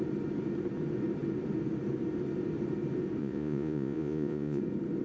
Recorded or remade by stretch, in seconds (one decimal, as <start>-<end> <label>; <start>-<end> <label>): 0.0-3.2 recorded; 3.2-4.6 remade; 4.6-5.0 recorded